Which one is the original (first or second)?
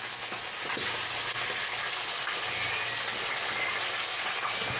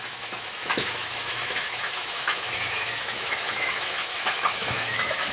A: first